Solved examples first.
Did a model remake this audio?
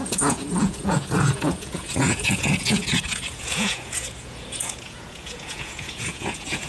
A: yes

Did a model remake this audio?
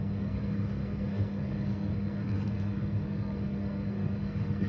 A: yes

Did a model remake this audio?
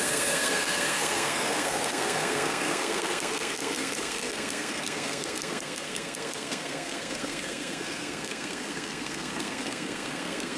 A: yes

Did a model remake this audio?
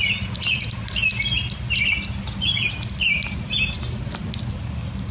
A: no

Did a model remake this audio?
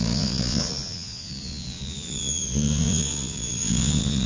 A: yes